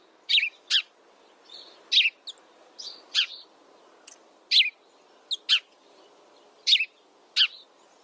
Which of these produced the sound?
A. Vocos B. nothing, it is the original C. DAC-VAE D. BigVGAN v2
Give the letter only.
B